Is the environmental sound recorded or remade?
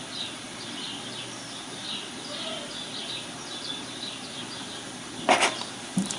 recorded